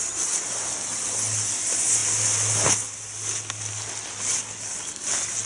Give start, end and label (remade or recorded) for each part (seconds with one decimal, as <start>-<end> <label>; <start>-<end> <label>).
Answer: 0.0-5.5 recorded